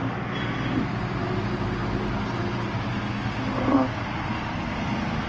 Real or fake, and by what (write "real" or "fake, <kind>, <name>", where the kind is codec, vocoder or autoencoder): real